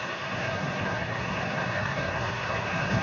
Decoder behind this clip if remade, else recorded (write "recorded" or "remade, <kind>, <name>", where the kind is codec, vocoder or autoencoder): remade, codec, SNAC